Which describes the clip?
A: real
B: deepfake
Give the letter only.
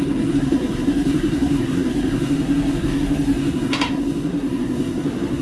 B